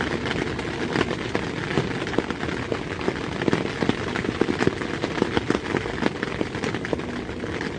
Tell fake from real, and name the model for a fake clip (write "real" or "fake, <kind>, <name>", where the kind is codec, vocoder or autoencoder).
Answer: real